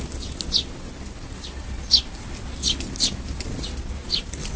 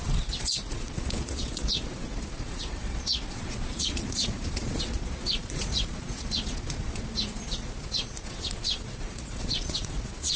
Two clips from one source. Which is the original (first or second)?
first